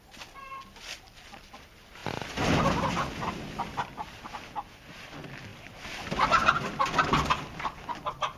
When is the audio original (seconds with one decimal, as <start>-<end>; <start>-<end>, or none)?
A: 0.0-8.4